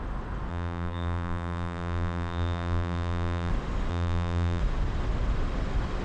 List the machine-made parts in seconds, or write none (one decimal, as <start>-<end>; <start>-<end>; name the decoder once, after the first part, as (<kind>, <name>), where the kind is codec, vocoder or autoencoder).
0.5-3.5 (vocoder, BigVGAN v2); 3.9-4.6